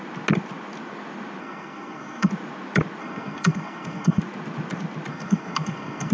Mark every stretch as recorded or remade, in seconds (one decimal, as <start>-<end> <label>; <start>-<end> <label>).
0.0-1.4 recorded; 1.4-2.3 remade; 2.3-3.0 recorded; 3.0-4.2 remade; 4.2-5.1 recorded; 5.1-6.1 remade